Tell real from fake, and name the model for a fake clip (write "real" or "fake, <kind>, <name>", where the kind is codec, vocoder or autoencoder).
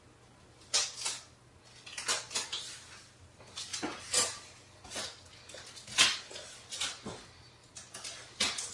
real